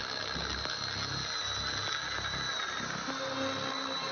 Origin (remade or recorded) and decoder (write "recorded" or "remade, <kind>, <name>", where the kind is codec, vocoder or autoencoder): recorded